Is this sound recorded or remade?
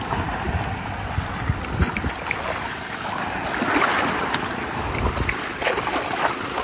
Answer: recorded